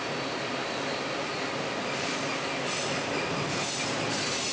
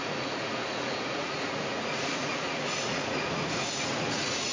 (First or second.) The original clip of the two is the first